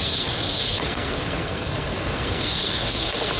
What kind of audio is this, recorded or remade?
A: remade